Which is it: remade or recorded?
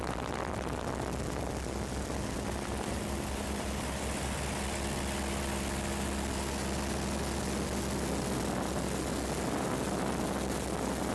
recorded